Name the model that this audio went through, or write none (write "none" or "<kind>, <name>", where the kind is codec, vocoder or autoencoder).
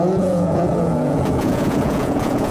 vocoder, Vocos